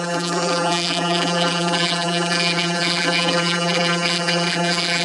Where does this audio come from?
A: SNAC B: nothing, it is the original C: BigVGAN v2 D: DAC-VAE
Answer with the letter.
C